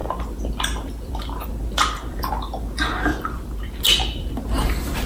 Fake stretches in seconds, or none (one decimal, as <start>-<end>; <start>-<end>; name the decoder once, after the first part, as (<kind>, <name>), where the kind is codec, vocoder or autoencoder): 3.1-3.8 (vocoder, BigVGAN v2)

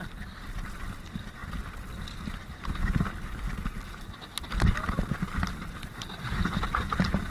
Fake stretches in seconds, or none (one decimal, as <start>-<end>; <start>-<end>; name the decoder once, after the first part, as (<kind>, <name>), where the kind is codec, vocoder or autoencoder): none

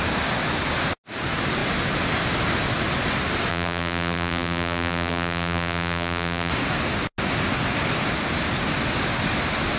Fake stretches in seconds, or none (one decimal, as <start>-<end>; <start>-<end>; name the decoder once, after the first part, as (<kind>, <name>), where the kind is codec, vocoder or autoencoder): 3.5-6.5 (vocoder, BigVGAN v2)

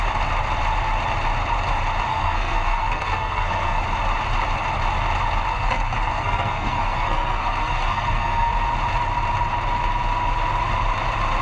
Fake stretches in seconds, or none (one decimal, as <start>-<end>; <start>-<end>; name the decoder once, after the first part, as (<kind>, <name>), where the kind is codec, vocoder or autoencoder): 2.1-3.8 (codec, SNAC); 5.5-8.5

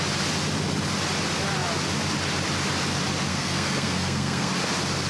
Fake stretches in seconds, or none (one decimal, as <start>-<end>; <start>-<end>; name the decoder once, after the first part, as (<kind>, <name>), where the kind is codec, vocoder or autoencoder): 3.3-4.5 (codec, SNAC)